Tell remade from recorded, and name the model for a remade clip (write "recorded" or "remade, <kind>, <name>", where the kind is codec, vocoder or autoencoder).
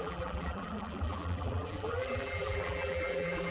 remade, vocoder, BigVGAN v2